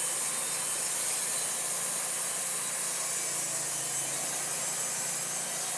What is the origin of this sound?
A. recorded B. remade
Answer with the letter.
A